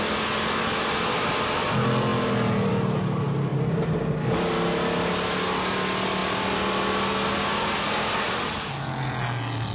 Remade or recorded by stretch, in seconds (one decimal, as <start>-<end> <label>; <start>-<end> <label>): 0.0-9.7 recorded